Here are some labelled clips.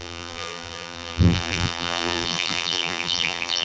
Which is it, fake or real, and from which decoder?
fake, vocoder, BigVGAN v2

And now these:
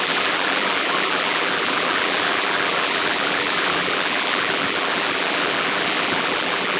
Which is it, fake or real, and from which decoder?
fake, vocoder, BigVGAN v2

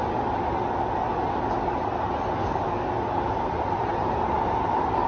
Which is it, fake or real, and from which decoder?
real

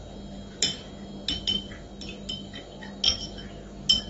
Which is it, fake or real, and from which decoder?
real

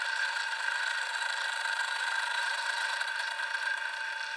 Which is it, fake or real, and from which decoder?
fake, vocoder, BigVGAN v2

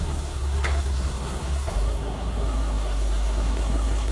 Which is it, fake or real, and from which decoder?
fake, codec, SNAC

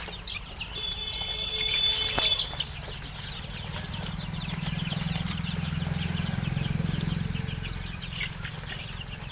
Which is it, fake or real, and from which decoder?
real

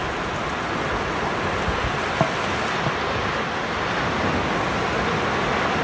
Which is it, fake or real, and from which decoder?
real